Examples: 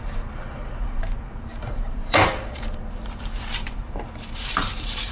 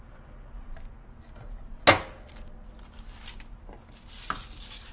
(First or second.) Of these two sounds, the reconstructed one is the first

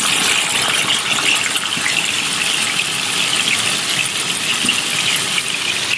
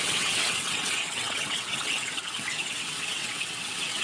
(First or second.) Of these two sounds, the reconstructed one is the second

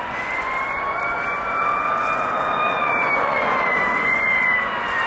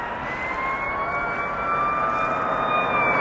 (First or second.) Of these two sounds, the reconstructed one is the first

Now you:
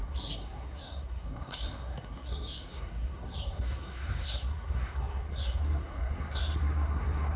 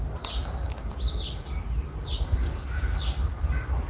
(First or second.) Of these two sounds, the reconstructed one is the first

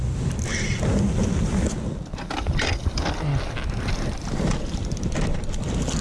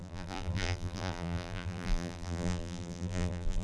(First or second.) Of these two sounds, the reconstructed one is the second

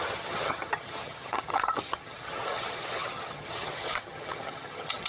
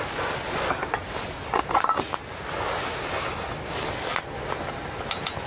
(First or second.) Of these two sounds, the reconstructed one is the first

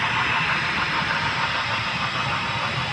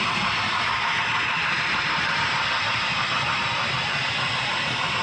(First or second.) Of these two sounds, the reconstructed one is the second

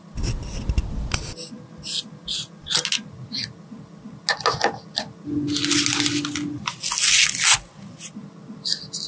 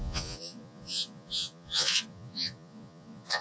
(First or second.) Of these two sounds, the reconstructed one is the second